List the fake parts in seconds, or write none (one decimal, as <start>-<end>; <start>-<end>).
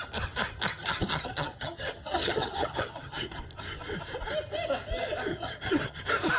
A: 0.7-3.4; 5.3-6.0